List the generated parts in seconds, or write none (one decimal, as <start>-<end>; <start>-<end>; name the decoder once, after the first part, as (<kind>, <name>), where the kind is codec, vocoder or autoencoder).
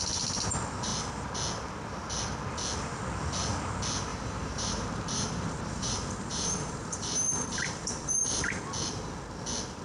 4.1-8.6 (vocoder, BigVGAN v2)